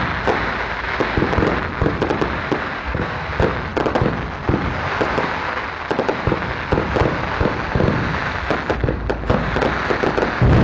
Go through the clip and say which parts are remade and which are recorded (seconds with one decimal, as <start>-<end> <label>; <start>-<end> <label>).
0.0-2.8 recorded; 2.8-3.3 remade; 3.3-10.6 recorded